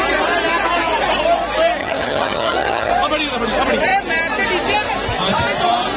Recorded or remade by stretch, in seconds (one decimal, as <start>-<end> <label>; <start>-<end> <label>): 0.0-1.8 recorded; 1.8-2.9 remade; 2.9-6.0 recorded